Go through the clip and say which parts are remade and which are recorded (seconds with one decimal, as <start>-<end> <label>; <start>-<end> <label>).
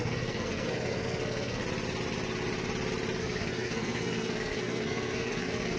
0.0-1.6 remade; 1.6-3.2 recorded; 3.2-5.8 remade